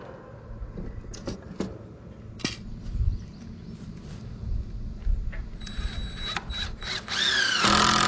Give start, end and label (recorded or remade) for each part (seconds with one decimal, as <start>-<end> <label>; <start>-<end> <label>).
0.0-2.8 recorded; 2.8-4.7 remade; 4.7-8.1 recorded